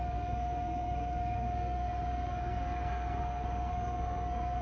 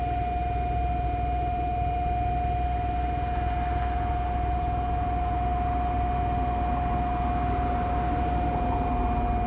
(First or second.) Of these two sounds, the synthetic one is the first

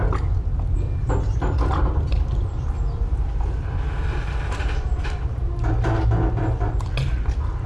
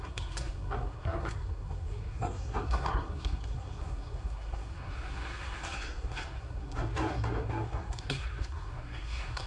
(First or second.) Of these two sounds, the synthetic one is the second